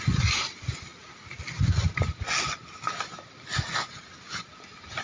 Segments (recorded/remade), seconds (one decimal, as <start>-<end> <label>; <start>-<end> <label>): 0.0-5.0 recorded